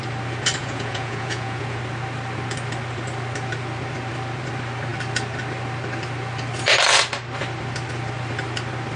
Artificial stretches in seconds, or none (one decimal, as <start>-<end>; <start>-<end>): 0.6-1.8